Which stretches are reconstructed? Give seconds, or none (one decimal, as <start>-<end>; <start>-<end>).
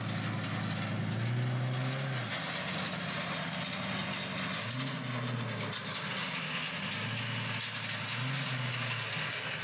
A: none